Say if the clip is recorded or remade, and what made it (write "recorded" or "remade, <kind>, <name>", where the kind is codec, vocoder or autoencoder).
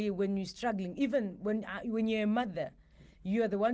recorded